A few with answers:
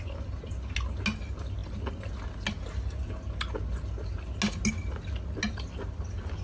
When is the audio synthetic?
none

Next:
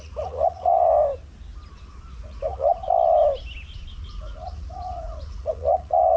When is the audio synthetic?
0.0-0.9 (vocoder, Vocos); 2.1-2.8; 4.0-6.2

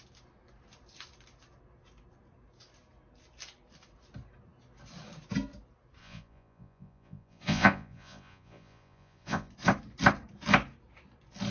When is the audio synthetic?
6.0-9.5 (vocoder, Vocos)

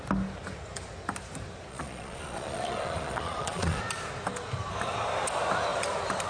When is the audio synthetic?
1.7-3.8 (vocoder, Vocos)

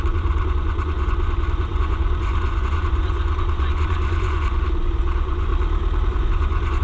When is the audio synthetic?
0.0-5.5 (vocoder, Vocos); 6.1-6.8

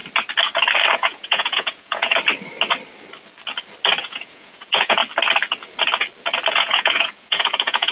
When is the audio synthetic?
0.9-2.1 (vocoder, Vocos); 4.0-5.0; 6.5-7.9

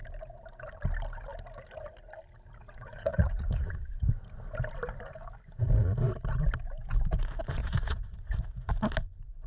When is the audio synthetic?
2.6-4.1 (vocoder, Vocos); 7.6-8.7

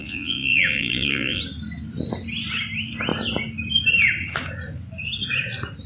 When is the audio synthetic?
0.0-1.4 (vocoder, Vocos)